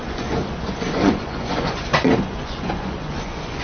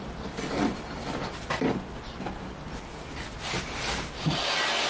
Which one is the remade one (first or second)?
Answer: first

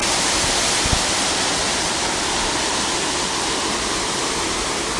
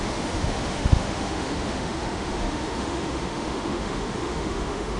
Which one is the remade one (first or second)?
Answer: second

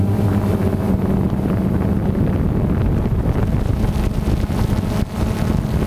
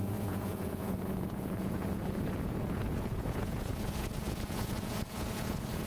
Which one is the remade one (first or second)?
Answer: second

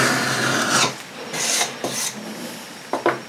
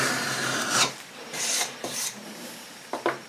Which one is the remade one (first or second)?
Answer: second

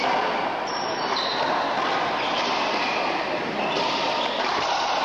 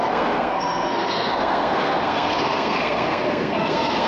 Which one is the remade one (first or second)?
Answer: second